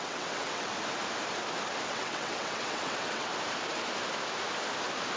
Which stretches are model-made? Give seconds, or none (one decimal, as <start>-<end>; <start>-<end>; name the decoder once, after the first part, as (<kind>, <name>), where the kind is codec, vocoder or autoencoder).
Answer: 0.0-0.7 (vocoder, WaveNeXt); 1.9-3.3